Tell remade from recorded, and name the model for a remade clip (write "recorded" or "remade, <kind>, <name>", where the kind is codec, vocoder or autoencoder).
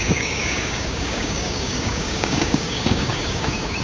remade, codec, DAC